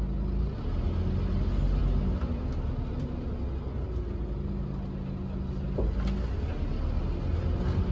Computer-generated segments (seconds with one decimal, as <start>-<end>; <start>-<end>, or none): none